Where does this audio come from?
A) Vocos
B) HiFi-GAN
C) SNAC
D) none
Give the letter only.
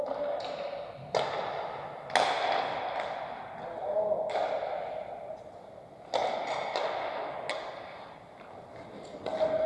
D